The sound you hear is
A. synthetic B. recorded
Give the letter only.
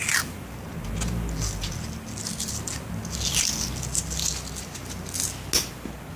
B